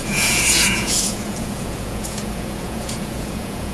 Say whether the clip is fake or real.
fake